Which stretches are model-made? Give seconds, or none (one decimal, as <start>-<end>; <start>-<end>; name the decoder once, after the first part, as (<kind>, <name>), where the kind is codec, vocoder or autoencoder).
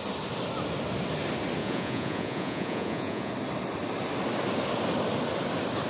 1.6-3.3 (vocoder, Vocos)